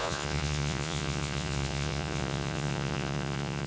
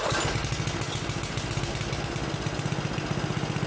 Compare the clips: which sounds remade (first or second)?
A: first